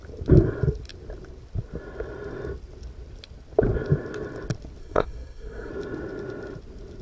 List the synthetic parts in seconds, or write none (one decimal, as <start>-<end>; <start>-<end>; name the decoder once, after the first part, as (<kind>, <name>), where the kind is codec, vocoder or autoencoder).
4.8-5.7 (codec, SNAC)